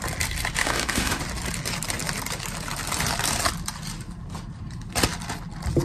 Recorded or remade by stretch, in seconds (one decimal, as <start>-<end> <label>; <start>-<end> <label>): 0.0-0.6 recorded; 0.6-1.2 remade; 1.2-5.8 recorded